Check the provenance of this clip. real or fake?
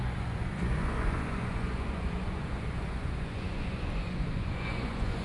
fake